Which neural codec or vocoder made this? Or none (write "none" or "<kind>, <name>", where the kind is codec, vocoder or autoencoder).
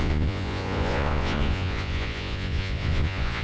vocoder, Vocos